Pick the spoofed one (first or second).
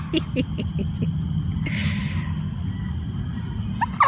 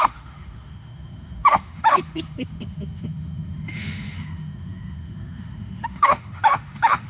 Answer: second